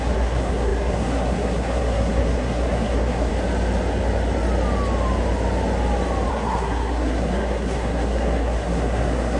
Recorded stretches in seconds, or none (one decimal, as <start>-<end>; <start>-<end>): 3.3-6.3

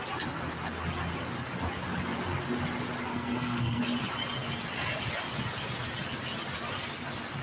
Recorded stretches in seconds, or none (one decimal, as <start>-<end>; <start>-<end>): 0.0-3.1; 3.8-7.4

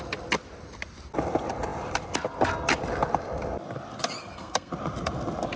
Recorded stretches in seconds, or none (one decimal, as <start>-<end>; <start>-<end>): 0.0-4.2; 4.7-5.6

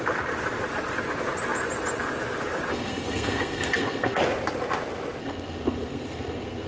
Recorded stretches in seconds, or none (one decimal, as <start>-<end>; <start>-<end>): 0.0-2.7; 4.2-5.2